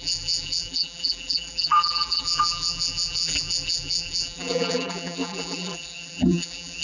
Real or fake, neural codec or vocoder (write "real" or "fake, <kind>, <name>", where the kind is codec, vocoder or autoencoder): fake, vocoder, BigVGAN v2